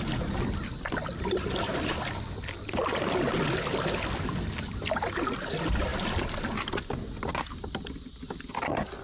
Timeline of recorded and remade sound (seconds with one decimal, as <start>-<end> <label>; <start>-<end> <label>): 0.0-9.0 recorded